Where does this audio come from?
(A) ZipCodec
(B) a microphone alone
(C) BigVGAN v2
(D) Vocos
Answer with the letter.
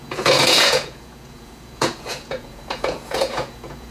D